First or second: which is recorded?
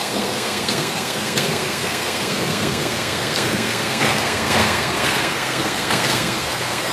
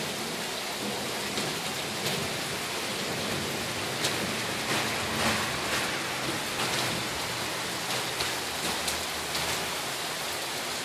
second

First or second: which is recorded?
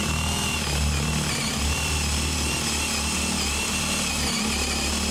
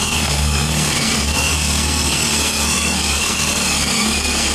first